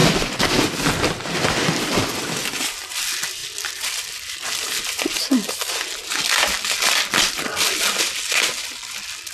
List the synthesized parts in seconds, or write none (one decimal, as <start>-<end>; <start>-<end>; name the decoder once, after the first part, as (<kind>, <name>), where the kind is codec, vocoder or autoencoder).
none